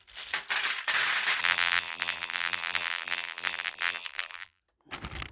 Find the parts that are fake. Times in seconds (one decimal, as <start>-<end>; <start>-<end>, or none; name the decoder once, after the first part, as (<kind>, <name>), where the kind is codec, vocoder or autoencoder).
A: 1.4-4.6 (vocoder, BigVGAN v2)